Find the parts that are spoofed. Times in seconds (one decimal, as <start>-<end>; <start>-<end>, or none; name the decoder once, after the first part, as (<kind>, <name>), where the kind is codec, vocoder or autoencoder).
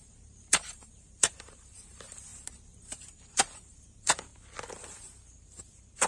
0.0-2.3 (vocoder, BigVGAN v2); 2.8-4.3; 4.8-6.1